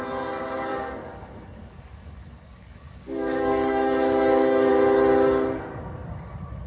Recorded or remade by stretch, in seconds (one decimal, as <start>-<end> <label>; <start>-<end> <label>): 0.0-0.7 recorded; 0.7-4.7 remade; 4.7-6.7 recorded